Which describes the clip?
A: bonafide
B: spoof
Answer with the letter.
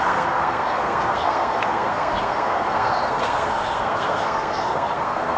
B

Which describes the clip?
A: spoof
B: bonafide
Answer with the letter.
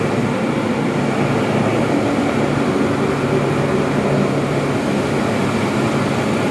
B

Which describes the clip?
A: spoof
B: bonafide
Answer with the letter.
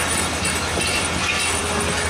B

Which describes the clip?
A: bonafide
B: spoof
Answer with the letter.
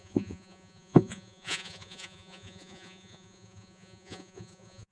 B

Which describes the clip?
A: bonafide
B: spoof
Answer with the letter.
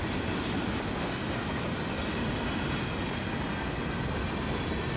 A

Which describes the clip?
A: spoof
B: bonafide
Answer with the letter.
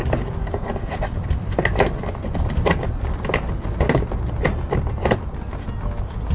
B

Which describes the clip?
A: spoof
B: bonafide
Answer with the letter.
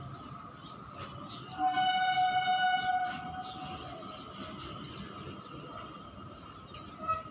B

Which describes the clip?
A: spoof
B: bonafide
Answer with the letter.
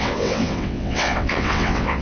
A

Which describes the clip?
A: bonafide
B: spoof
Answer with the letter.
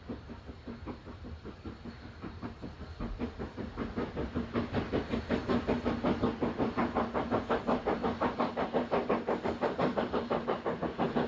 A